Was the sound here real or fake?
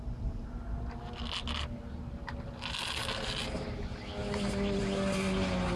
real